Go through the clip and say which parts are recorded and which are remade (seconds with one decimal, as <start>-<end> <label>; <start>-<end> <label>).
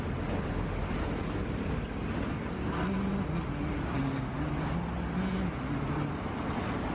0.0-6.9 recorded